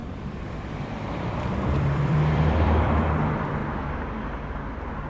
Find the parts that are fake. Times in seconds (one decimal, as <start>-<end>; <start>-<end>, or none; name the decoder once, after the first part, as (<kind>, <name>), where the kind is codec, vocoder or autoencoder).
0.5-3.6 (vocoder, BigVGAN v2)

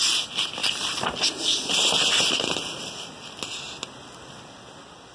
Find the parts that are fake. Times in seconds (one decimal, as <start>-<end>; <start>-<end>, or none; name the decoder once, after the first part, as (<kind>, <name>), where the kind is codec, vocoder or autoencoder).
none

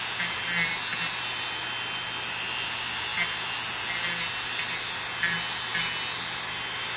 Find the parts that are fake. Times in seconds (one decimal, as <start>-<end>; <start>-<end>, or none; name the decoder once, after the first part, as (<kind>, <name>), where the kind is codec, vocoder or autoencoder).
none

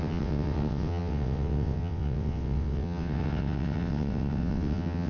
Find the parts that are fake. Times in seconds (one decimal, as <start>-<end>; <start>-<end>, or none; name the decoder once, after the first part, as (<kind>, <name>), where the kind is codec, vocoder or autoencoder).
0.0-5.1 (vocoder, WaveNeXt)

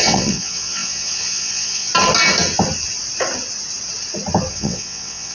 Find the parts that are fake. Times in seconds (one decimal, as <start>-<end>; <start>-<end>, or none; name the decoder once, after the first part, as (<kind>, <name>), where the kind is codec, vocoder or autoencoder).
0.0-1.9 (vocoder, WaveNeXt); 4.5-5.3

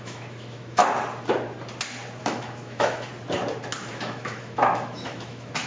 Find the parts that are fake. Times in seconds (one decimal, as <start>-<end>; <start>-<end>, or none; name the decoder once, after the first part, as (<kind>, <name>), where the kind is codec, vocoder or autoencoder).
0.0-0.8 (autoencoder, DAC-VAE); 2.2-3.1; 3.9-5.7

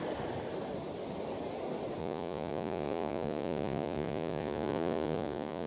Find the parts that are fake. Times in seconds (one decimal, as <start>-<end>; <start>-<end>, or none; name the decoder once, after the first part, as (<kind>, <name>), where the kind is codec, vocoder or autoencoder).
2.0-5.7 (vocoder, Vocos)